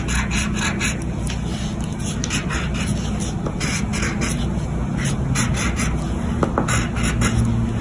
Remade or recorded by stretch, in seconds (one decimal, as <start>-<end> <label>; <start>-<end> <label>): 0.0-7.8 recorded